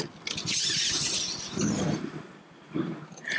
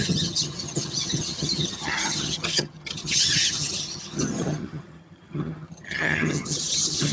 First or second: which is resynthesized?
second